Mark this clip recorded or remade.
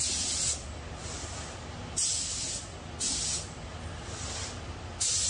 recorded